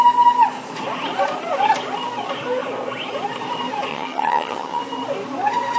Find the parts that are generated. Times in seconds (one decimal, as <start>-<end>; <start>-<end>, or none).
3.9-4.8